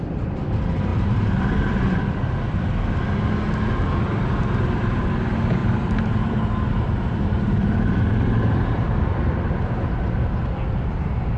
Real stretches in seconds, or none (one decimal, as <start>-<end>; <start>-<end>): 0.0-0.9; 2.0-5.6; 8.9-11.4

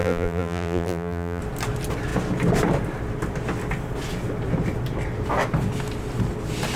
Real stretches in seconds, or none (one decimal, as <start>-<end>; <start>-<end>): 1.4-6.8

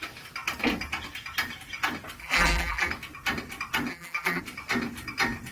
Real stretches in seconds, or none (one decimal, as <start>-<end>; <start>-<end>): 0.0-2.2; 2.9-3.9; 4.4-5.5

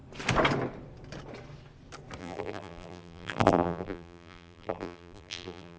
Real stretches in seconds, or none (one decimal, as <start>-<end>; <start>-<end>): 0.0-2.2

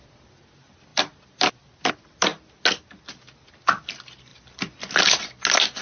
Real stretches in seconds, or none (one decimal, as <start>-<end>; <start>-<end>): 0.0-0.9; 1.9-5.8

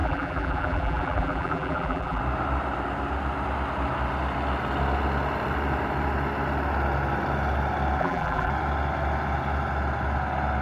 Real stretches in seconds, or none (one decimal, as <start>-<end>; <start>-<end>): 2.2-8.0; 8.5-10.6

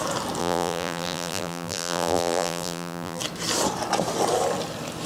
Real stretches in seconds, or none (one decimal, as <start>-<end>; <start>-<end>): 0.0-0.4; 3.2-5.1